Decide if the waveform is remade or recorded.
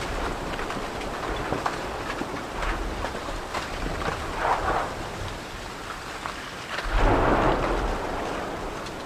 recorded